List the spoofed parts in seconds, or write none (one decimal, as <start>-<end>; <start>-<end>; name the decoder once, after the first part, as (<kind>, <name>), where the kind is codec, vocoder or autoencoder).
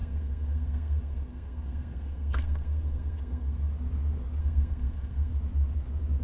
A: 0.0-3.7 (codec, SNAC); 4.4-5.3